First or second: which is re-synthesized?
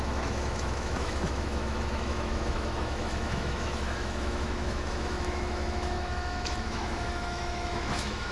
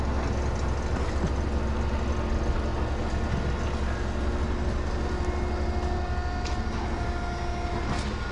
first